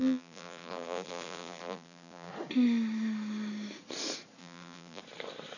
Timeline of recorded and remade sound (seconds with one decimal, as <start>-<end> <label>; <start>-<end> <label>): 0.0-2.3 remade; 2.3-4.4 recorded; 4.4-5.0 remade; 5.0-5.6 recorded